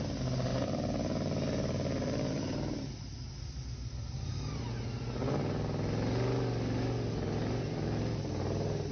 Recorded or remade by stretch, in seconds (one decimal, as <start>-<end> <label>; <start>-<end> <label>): 0.0-0.5 recorded; 0.5-2.4 remade; 2.4-7.4 recorded; 7.4-8.3 remade; 8.3-8.9 recorded